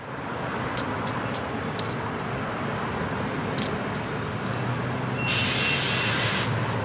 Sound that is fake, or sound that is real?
real